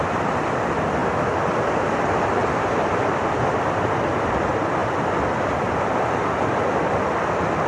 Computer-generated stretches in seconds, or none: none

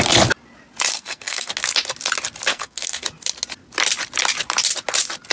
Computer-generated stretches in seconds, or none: 0.9-1.5 (codec, SNAC); 2.5-3.0

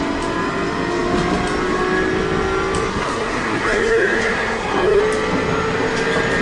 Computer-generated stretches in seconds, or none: 2.9-5.0 (codec, SNAC)

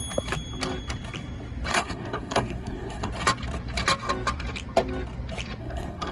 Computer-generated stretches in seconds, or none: 1.7-3.1 (codec, SNAC); 5.6-6.1